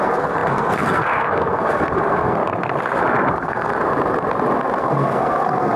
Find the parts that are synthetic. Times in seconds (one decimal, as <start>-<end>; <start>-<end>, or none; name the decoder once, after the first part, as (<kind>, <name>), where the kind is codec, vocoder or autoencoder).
0.0-2.4 (codec, SNAC); 3.3-3.7; 4.8-5.8